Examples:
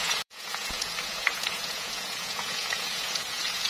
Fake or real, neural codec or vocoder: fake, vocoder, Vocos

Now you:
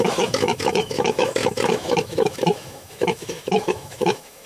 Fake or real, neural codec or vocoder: fake, autoencoder, DAC-VAE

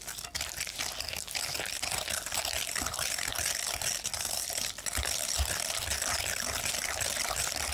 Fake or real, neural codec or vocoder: real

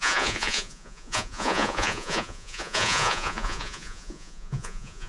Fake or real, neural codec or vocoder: fake, vocoder, Vocos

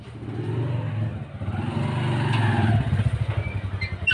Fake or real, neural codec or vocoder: real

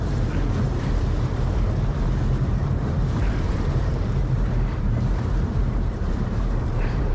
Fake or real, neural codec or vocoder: fake, vocoder, BigVGAN v2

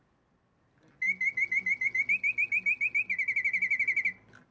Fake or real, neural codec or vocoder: real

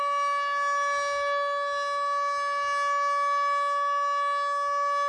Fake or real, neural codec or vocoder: real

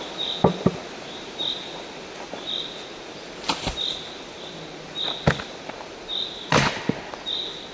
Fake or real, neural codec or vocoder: real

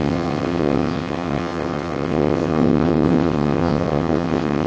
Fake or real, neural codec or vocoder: fake, vocoder, WaveNeXt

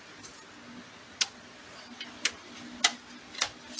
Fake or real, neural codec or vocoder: real